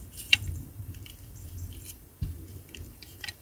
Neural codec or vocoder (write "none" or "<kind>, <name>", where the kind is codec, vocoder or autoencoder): vocoder, BigVGAN v2